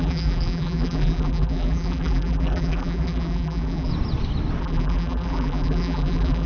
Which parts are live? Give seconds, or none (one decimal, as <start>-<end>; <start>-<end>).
3.9-4.6

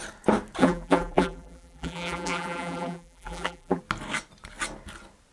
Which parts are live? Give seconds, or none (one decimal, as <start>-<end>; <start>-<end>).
0.0-0.6; 3.8-5.3

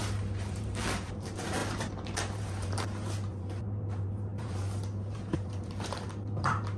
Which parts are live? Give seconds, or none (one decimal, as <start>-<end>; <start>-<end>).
none

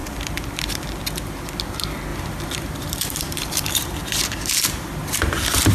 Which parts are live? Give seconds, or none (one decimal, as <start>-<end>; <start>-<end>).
1.0-2.1

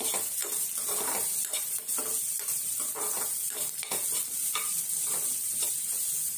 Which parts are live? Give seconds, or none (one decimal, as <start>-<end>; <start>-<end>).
0.0-0.4; 4.0-6.4

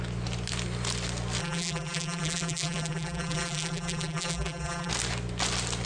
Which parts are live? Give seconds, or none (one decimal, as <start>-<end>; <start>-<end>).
0.0-1.4; 4.9-5.9

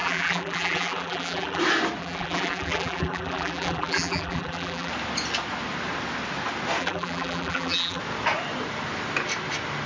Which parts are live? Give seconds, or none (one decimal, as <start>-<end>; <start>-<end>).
1.6-2.0; 4.9-6.8; 8.0-9.9

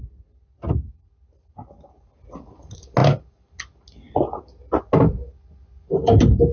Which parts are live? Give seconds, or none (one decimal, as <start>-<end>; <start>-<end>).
0.0-6.5